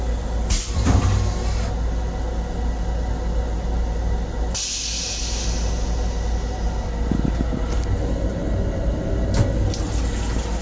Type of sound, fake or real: real